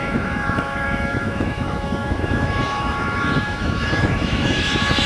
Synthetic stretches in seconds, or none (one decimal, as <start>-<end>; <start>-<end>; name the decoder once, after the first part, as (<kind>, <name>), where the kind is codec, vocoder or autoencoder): 0.0-5.1 (autoencoder, DAC-VAE)